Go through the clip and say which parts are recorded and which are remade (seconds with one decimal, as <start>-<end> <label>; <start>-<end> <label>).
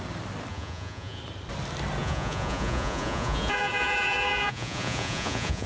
0.0-0.5 recorded; 0.5-1.2 remade; 1.2-2.0 recorded; 2.0-5.7 remade